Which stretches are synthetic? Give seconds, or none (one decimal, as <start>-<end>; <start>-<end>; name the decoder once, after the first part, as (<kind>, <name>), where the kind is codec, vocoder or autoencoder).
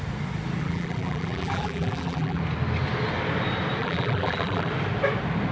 0.6-2.4 (vocoder, BigVGAN v2); 3.8-4.7